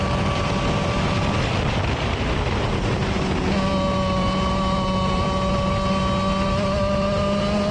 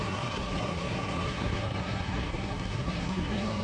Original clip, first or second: first